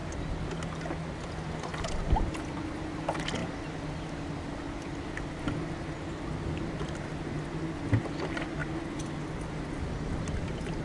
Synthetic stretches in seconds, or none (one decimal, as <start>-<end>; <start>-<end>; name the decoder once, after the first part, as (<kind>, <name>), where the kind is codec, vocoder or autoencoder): none